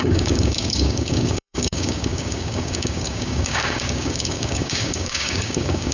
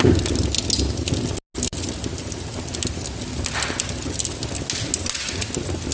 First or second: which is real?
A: second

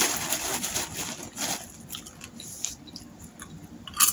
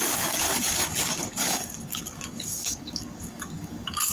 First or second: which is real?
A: first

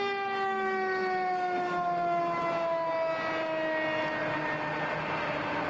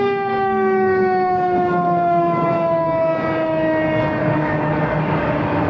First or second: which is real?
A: first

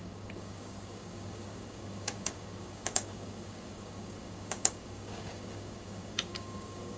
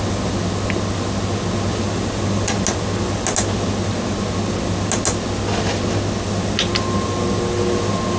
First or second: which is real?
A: second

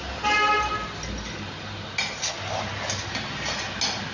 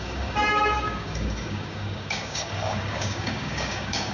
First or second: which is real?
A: first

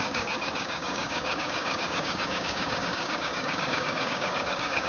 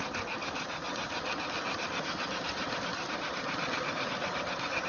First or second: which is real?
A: second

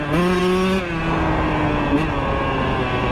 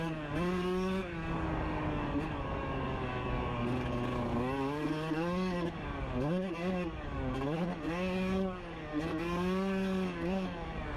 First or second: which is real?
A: first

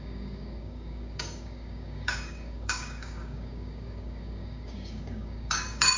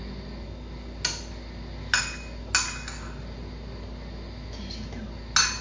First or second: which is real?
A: second